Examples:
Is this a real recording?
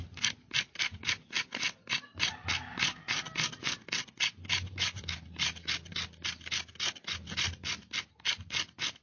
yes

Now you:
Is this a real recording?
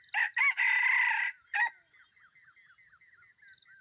yes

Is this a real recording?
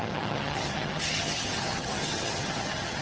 no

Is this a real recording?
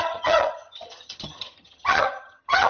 no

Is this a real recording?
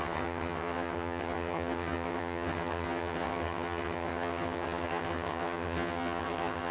no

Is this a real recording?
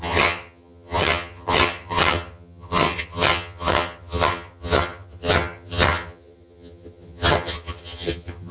no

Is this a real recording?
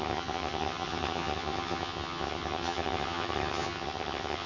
no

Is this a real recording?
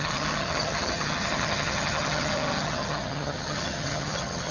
no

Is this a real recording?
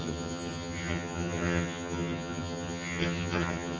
no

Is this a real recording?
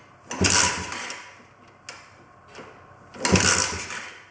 yes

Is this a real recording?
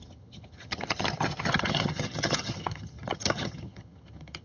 no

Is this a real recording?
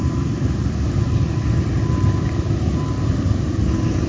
yes